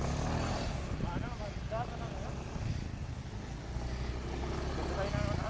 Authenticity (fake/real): real